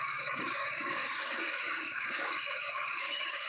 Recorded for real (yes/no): no